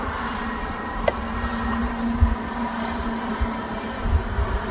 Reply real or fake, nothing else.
fake